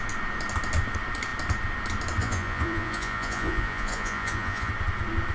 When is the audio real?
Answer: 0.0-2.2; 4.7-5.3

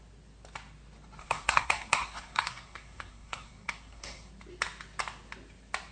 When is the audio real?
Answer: 0.0-1.2; 4.3-5.9

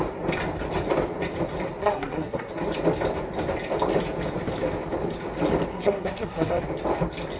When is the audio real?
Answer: 0.0-1.8; 2.5-5.7; 6.6-7.4

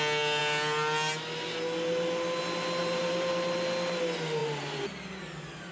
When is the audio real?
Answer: 0.0-2.8; 3.3-4.4; 5.2-5.7

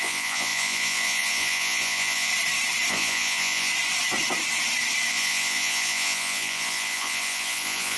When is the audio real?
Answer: 2.3-2.9; 3.7-5.1

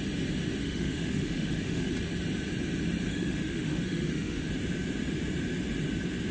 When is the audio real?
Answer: 0.0-0.6; 1.9-3.1; 4.5-6.3

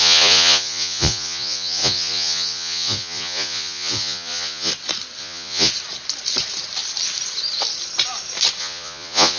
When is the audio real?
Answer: 4.7-5.2; 5.7-8.6

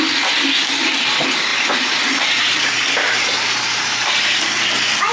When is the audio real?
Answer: 0.0-1.5; 4.3-5.1